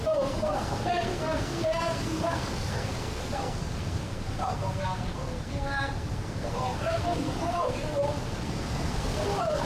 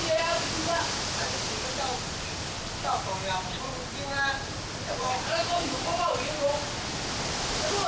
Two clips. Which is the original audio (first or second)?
second